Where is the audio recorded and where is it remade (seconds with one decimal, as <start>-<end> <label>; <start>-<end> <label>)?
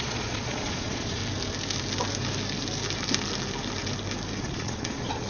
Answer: 0.0-1.2 remade; 1.2-4.4 recorded; 4.4-5.3 remade